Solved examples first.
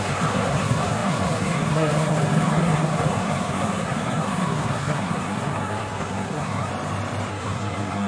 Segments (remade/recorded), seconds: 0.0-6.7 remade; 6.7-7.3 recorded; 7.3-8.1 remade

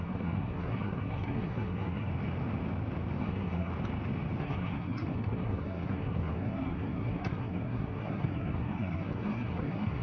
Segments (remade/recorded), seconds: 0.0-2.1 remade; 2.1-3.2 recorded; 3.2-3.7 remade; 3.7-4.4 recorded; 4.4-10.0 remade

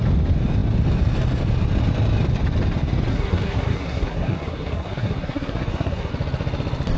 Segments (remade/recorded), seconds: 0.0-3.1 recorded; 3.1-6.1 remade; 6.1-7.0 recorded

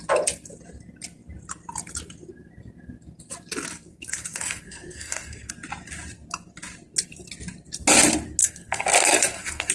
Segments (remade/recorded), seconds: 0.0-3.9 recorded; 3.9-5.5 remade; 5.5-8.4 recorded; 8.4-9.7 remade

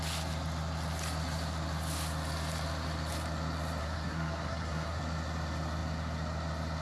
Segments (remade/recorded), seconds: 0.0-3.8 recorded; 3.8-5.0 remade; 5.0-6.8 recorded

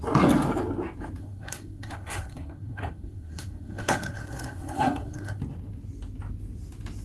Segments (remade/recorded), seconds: 0.0-1.2 recorded; 1.2-5.4 remade; 5.4-7.0 recorded